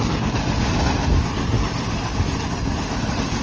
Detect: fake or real real